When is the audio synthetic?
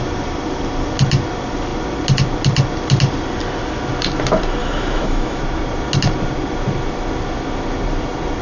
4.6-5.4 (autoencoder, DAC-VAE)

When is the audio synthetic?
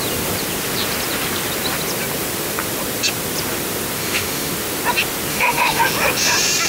4.0-4.5 (autoencoder, DAC-VAE); 5.3-5.8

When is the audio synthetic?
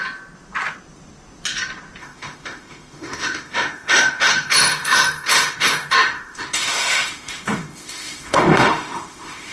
2.0-9.5 (autoencoder, DAC-VAE)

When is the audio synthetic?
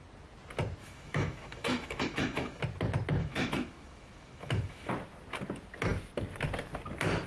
0.8-2.6 (autoencoder, DAC-VAE); 3.2-4.9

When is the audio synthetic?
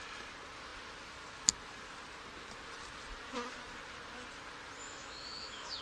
4.8-5.8 (autoencoder, DAC-VAE)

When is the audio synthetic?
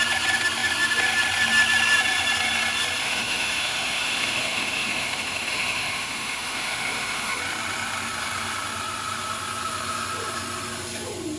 3.0-7.4 (autoencoder, DAC-VAE)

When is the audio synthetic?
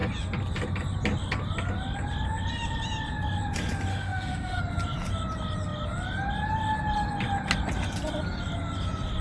3.9-4.6 (autoencoder, DAC-VAE)